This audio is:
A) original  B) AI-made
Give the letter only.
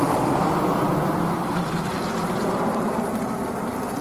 A